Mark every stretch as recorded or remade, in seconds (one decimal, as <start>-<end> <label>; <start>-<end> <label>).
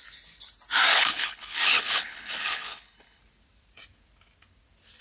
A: 0.0-0.9 recorded; 0.9-3.2 remade; 3.2-5.0 recorded